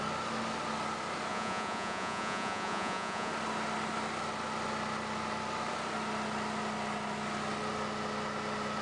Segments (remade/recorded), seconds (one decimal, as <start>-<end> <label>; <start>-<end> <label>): 0.0-1.3 recorded; 1.3-3.3 remade; 3.3-8.8 recorded